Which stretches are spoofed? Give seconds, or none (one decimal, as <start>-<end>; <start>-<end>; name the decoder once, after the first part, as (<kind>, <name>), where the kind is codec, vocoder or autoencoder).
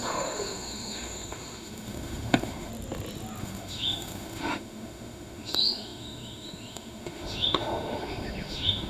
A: 0.0-2.7 (autoencoder, DAC-VAE); 3.4-8.9